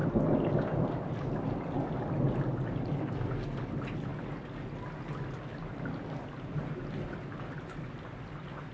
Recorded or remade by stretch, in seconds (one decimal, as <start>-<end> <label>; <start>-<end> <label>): 0.0-3.0 recorded; 3.0-3.6 remade; 3.6-8.7 recorded